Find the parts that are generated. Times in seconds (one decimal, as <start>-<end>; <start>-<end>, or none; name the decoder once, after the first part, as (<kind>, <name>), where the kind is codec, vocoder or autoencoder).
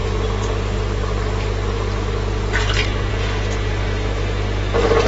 none